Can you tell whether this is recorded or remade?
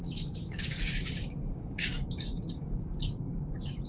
remade